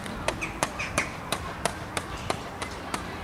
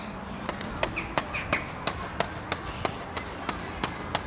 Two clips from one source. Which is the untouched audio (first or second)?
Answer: second